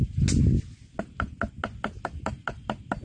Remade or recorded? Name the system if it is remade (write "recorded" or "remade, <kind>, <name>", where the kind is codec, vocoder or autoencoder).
recorded